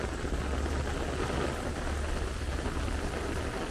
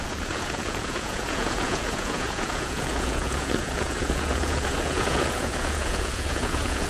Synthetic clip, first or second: second